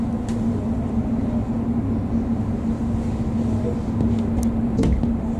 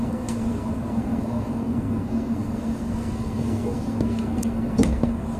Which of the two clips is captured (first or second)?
first